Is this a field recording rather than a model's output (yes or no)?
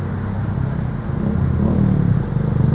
yes